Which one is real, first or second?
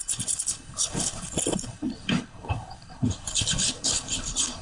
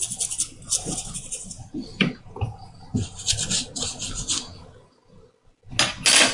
second